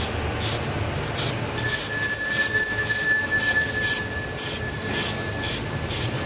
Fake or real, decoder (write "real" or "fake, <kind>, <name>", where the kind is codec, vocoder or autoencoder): real